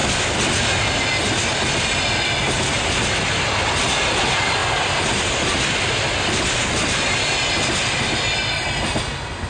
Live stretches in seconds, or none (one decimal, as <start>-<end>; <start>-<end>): 0.0-9.5